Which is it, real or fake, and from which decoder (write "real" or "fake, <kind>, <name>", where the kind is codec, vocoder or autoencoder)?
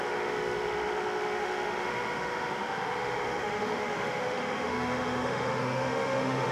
fake, autoencoder, DAC-VAE